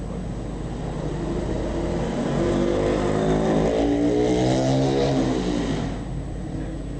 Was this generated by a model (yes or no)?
no